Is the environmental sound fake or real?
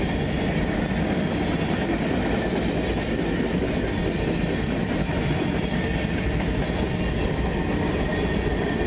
real